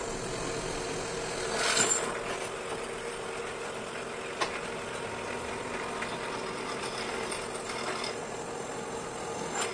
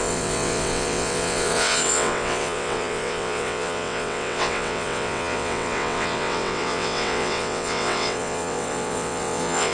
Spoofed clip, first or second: second